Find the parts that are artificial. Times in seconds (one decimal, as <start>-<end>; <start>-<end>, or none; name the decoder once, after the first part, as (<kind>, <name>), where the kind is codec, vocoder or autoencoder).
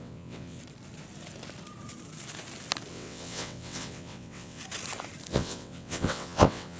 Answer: 0.0-0.6 (vocoder, WaveNeXt); 2.9-4.6; 5.3-6.8